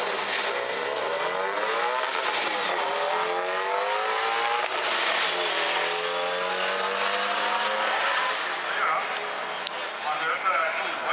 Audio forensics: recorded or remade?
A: recorded